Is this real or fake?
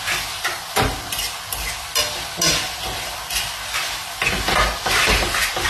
real